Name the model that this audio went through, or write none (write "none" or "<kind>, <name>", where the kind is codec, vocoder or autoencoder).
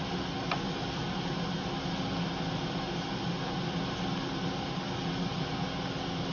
none